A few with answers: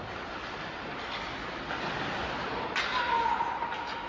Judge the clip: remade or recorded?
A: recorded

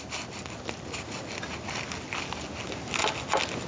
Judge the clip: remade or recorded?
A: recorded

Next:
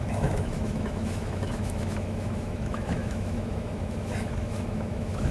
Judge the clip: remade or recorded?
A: remade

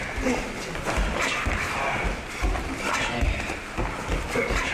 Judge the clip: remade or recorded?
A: recorded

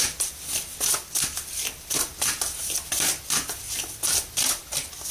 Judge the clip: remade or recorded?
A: recorded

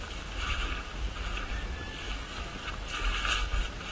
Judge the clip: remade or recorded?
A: recorded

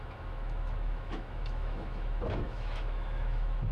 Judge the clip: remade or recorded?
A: remade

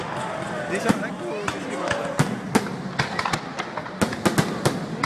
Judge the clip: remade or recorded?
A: recorded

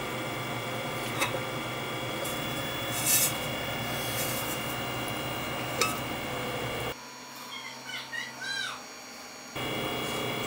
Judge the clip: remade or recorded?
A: recorded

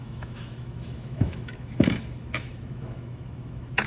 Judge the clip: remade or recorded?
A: remade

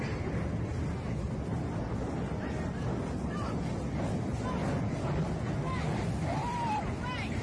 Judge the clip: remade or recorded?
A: recorded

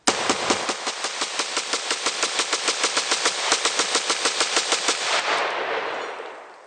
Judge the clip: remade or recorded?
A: recorded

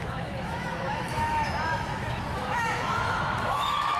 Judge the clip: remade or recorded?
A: remade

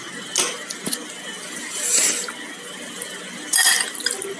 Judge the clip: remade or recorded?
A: recorded